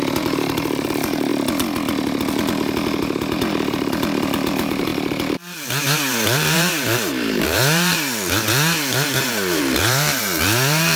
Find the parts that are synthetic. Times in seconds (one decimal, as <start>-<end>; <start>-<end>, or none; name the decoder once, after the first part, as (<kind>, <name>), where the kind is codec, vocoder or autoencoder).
0.0-1.3 (vocoder, BigVGAN v2); 3.0-11.0